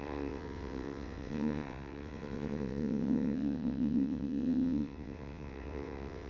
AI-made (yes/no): yes